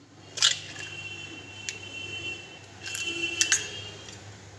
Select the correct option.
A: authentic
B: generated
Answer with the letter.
A